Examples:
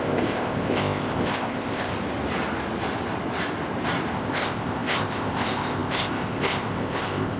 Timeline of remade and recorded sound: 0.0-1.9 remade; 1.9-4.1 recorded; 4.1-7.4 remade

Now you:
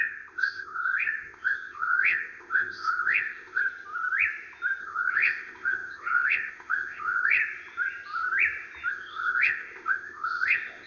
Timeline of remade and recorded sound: 0.0-3.6 remade; 3.6-4.8 recorded; 4.8-7.4 remade; 7.4-8.9 recorded; 8.9-10.9 remade

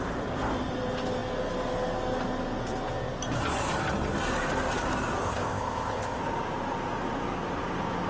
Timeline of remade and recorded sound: 0.0-5.2 recorded; 5.2-6.2 remade; 6.2-8.1 recorded

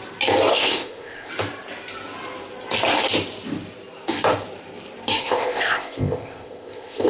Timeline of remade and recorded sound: 0.0-0.5 recorded; 0.5-1.3 remade; 1.3-5.2 recorded; 5.2-7.1 remade